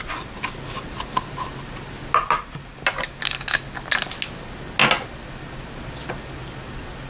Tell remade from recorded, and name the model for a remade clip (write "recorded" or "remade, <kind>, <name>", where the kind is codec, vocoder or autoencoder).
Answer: recorded